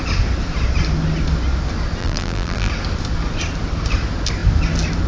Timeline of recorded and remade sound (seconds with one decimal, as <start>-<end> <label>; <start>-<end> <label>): 0.0-2.0 recorded; 2.0-2.7 remade; 2.7-5.1 recorded